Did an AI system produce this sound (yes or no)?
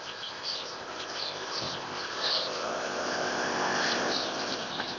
yes